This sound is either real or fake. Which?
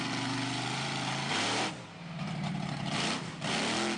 real